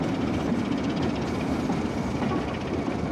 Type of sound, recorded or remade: recorded